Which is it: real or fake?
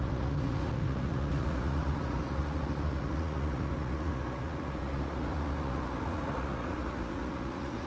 fake